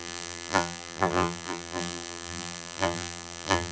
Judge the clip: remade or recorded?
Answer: remade